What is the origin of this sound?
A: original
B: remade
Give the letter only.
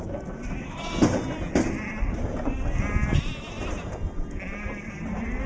A